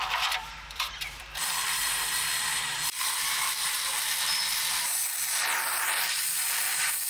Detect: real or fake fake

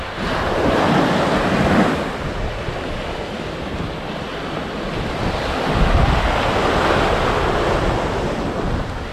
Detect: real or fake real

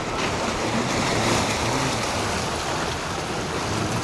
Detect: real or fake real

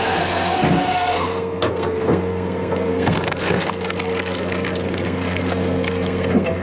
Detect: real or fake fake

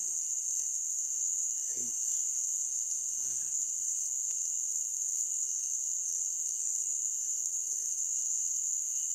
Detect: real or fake fake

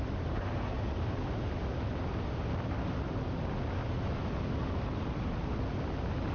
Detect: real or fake real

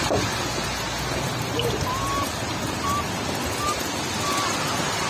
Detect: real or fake real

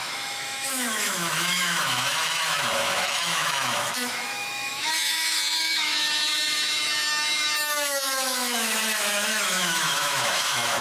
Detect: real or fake fake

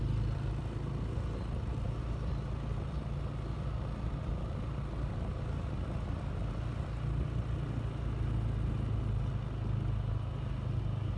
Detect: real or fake real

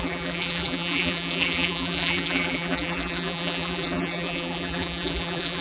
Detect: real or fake fake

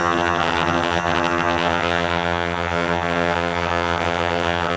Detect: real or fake fake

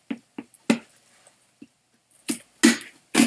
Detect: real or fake real